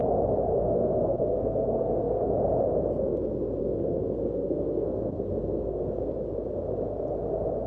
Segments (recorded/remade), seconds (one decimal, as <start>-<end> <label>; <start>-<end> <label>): 0.0-0.5 recorded; 0.5-2.3 remade; 2.3-3.6 recorded; 3.6-6.1 remade; 6.1-7.7 recorded